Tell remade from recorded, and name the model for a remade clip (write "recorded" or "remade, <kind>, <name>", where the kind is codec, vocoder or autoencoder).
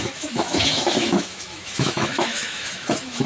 remade, autoencoder, DAC-VAE